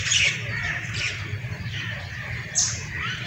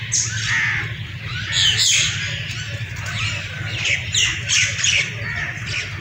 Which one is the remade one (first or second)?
first